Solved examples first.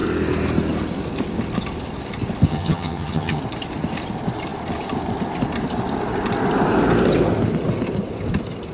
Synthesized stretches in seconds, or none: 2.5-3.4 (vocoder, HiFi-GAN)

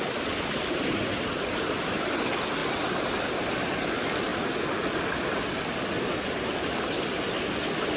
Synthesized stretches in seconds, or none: none

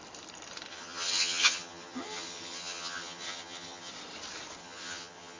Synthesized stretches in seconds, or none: 0.7-3.9 (vocoder, HiFi-GAN); 4.6-5.4

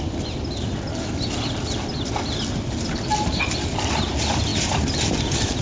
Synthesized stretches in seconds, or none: none